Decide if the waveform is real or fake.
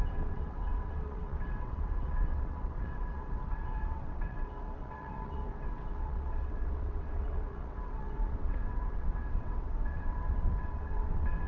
fake